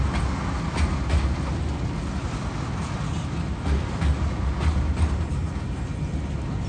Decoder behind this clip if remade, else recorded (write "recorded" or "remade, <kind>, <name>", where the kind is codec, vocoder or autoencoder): recorded